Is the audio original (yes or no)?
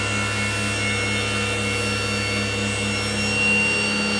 yes